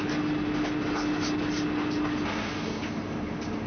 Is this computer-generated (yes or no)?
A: no